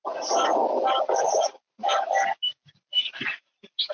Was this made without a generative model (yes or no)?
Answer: yes